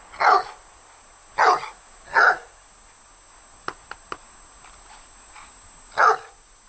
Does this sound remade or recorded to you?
recorded